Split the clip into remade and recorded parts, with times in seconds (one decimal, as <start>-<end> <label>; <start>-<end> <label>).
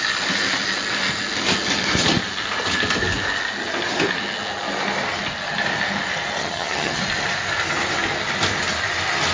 0.0-6.4 recorded; 6.4-7.0 remade; 7.0-9.3 recorded